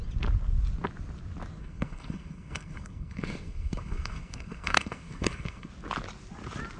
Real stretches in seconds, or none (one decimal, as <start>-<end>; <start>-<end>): 0.0-1.6; 5.7-6.8